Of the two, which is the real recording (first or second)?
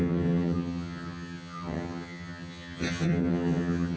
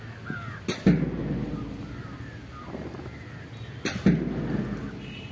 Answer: second